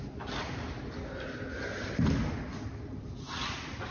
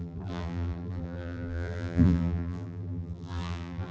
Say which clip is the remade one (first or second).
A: second